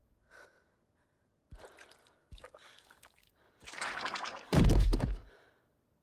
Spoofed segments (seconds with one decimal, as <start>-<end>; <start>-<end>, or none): 2.0-5.3